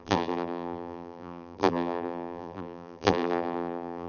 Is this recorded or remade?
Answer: remade